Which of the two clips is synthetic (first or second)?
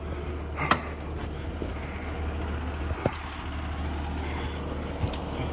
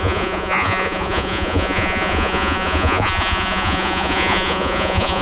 second